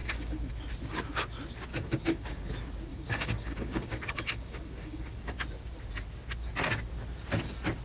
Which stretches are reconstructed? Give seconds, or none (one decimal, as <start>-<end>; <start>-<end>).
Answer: 0.0-0.5; 1.7-2.5; 2.9-5.2